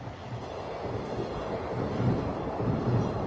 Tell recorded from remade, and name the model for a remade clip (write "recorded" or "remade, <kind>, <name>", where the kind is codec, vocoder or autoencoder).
remade, vocoder, BigVGAN v2